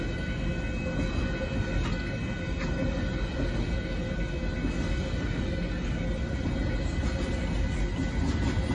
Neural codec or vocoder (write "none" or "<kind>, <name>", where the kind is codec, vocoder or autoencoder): none